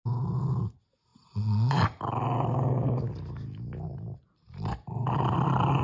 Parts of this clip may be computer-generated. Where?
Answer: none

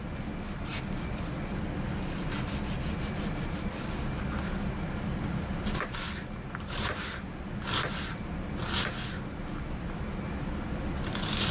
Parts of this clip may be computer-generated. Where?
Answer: none

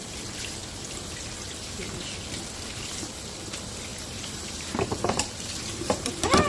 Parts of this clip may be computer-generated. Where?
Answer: 3.9-6.1

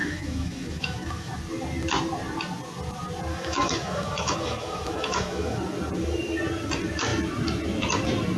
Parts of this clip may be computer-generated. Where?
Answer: 0.0-1.3; 3.3-5.6

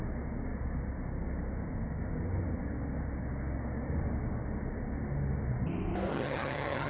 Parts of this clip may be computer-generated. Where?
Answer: 6.1-6.9

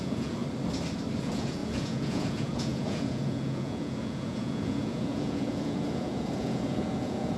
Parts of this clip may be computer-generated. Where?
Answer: 0.0-0.4; 1.2-7.4

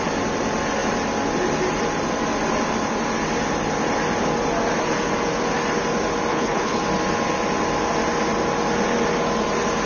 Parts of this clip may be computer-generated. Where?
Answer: 6.3-6.8